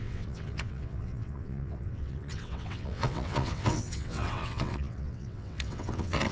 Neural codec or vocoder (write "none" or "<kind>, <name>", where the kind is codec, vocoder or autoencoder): vocoder, WaveNeXt